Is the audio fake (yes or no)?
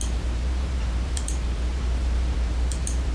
yes